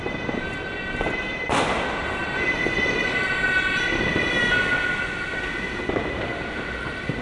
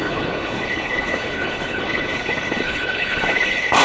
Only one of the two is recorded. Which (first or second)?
first